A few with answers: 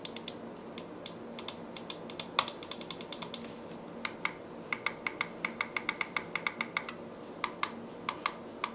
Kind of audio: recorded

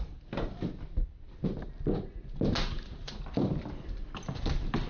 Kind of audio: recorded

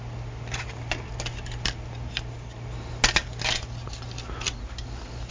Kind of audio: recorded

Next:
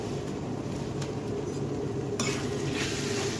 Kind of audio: recorded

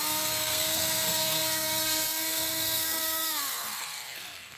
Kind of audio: remade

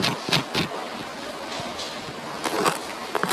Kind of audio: recorded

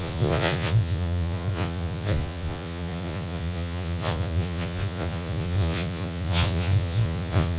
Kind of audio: remade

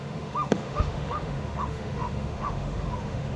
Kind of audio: remade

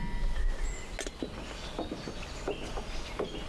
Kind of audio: recorded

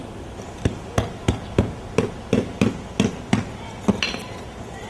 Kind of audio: recorded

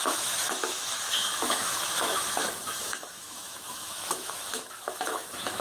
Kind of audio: remade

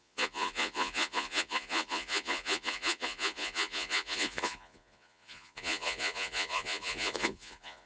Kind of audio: remade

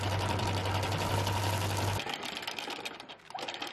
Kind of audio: recorded